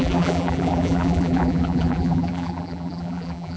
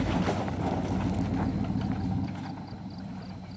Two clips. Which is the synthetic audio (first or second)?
first